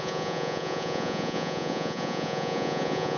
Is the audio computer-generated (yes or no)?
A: yes